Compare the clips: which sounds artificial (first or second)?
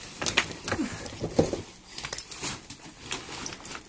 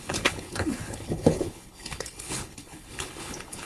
second